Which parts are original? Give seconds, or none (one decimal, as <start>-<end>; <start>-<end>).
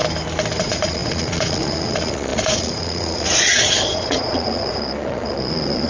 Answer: 0.0-0.6